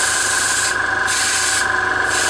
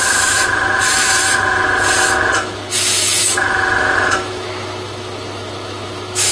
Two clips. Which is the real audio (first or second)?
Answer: first